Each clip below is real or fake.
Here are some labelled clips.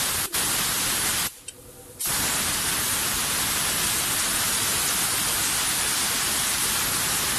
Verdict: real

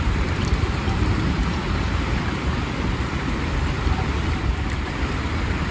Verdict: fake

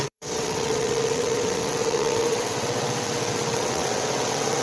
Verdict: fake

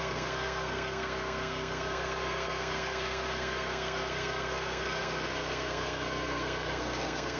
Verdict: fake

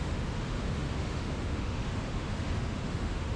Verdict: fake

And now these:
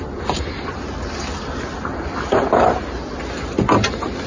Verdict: real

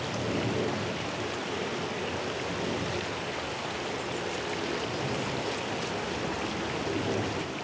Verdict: real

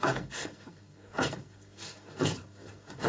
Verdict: fake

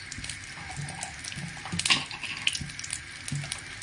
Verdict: real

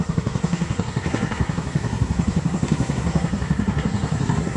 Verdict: fake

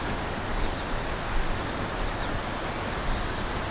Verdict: real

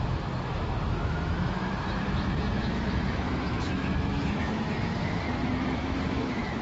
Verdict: fake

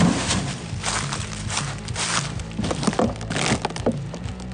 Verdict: real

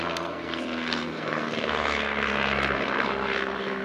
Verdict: fake